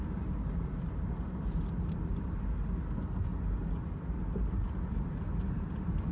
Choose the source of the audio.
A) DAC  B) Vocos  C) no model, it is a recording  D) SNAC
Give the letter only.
C